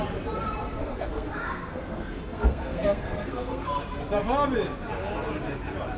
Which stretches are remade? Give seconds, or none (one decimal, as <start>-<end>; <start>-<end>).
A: 0.8-3.8